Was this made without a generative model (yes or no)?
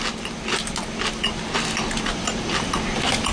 yes